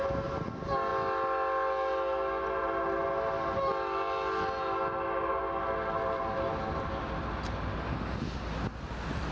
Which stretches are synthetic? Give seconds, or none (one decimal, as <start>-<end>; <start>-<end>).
none